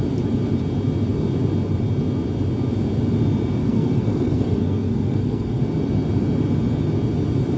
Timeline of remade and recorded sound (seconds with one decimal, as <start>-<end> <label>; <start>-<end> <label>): 0.0-3.6 recorded; 3.6-5.6 remade; 5.6-7.6 recorded